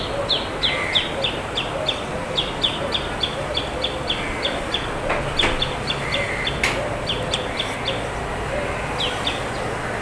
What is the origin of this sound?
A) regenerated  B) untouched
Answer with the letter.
B